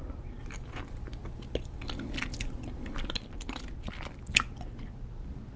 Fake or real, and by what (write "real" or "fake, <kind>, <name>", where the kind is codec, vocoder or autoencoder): real